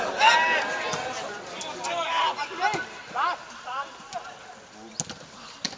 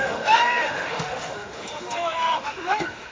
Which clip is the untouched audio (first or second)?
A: first